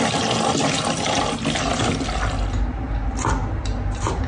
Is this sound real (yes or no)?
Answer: yes